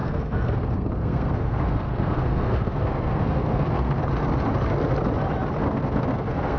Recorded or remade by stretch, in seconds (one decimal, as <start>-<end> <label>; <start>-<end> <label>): 0.0-4.0 remade; 4.0-5.6 recorded; 5.6-6.6 remade